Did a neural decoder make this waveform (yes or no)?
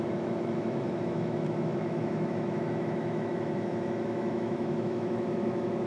yes